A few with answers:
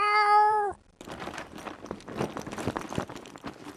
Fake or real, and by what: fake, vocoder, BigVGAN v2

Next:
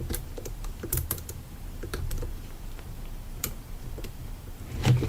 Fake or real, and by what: fake, vocoder, BigVGAN v2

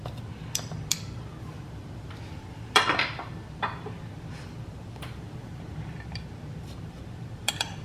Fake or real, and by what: fake, vocoder, BigVGAN v2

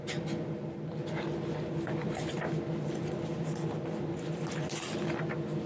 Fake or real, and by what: real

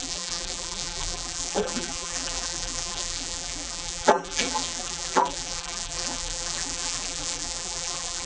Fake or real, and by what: fake, vocoder, BigVGAN v2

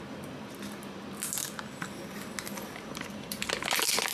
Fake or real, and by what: real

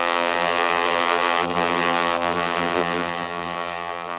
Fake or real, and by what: fake, vocoder, BigVGAN v2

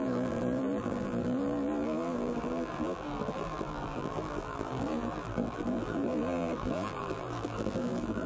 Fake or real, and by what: fake, vocoder, BigVGAN v2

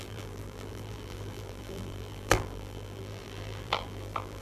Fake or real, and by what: fake, vocoder, BigVGAN v2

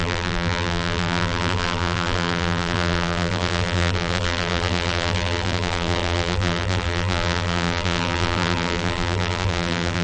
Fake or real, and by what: fake, vocoder, BigVGAN v2